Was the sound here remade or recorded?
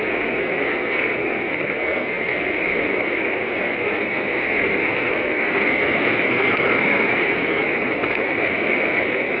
remade